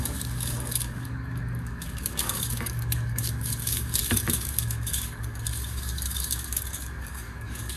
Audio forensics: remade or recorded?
remade